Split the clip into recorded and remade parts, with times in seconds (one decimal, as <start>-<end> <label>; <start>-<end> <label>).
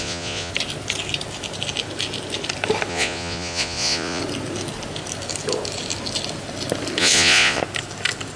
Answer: 0.0-0.5 remade; 0.5-2.9 recorded; 2.9-4.2 remade; 4.2-7.0 recorded; 7.0-7.6 remade; 7.6-8.4 recorded